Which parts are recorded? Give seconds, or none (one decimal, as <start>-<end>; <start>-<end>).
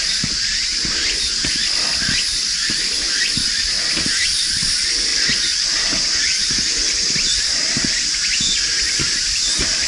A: 0.0-9.9